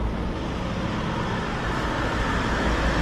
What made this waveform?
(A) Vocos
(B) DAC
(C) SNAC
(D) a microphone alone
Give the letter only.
D